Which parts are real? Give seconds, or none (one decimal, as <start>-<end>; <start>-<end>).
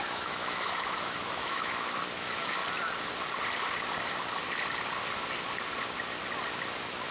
2.6-7.1